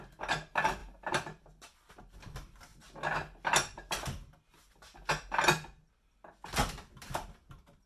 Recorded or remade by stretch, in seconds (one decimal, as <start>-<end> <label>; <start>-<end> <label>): 0.0-7.9 recorded